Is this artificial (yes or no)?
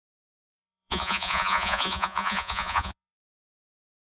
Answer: yes